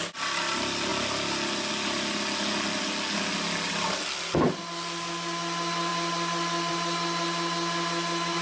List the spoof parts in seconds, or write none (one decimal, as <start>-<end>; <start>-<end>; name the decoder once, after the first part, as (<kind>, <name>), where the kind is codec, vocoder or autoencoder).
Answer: none